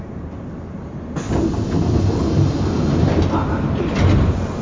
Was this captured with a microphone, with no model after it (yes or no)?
yes